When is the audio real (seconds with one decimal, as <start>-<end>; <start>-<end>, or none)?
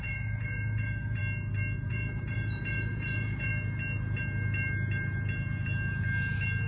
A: 1.2-1.9; 3.5-6.7